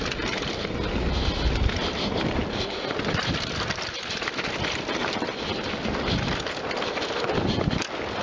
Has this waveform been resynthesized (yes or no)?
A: no